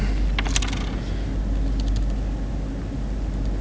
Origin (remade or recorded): recorded